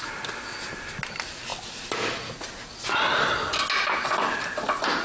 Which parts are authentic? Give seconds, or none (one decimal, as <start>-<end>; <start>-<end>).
0.0-5.0

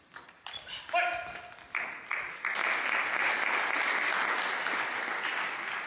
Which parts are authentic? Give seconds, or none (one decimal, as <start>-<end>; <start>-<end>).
0.0-5.9